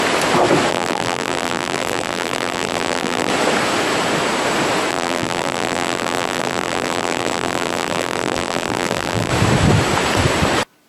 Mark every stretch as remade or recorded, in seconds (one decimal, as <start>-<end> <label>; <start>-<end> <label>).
0.0-0.7 recorded; 0.7-3.3 remade; 3.3-4.9 recorded; 4.9-9.3 remade; 9.3-10.9 recorded